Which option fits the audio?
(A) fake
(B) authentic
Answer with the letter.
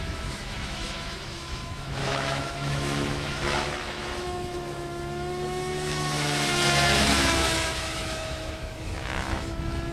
A